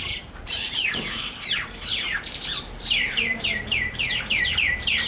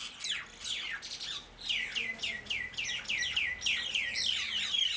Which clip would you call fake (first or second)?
first